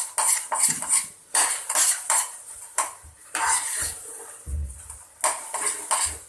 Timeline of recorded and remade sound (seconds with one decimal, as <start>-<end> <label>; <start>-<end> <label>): 0.0-1.2 recorded; 1.2-4.2 remade; 4.2-6.3 recorded